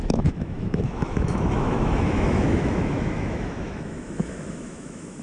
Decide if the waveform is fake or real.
fake